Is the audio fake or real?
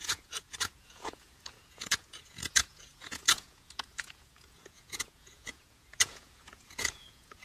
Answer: fake